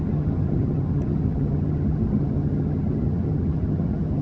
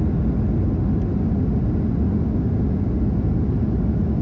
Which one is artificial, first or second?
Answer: first